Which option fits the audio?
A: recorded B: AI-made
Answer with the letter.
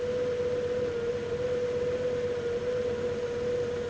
A